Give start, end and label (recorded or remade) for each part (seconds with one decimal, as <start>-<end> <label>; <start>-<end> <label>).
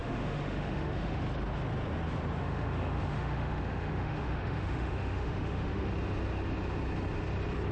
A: 0.0-1.2 remade; 1.2-2.4 recorded; 2.4-5.9 remade; 5.9-7.7 recorded